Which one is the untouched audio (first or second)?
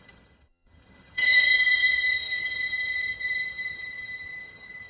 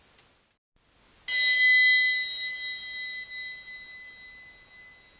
second